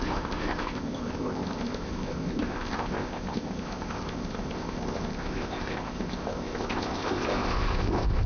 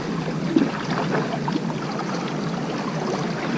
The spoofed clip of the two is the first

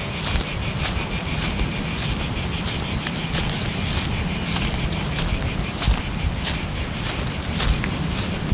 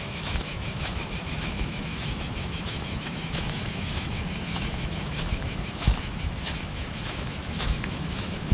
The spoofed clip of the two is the second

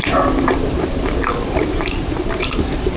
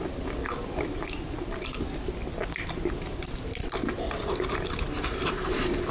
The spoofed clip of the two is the first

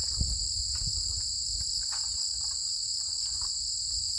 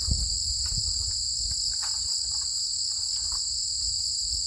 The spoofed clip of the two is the first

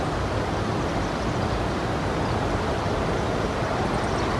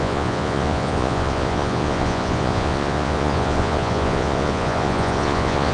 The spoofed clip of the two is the second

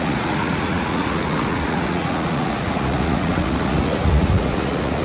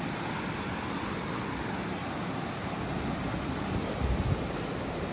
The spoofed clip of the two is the first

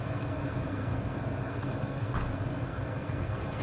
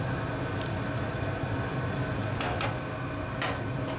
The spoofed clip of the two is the first